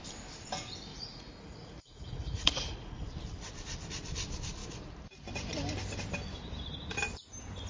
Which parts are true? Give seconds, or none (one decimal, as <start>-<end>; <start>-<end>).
0.0-0.9; 3.0-7.7